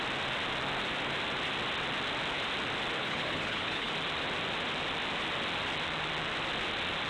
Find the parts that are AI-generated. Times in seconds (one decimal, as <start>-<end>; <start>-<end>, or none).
3.0-3.9